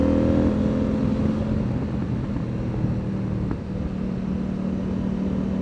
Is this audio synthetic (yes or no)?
no